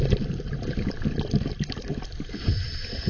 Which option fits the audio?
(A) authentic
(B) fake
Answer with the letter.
A